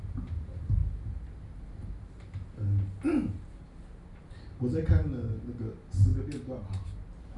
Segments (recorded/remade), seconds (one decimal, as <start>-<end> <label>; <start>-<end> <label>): 0.0-7.4 recorded